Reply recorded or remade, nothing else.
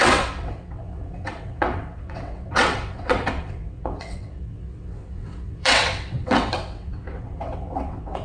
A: remade